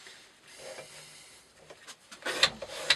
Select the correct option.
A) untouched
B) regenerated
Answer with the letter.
A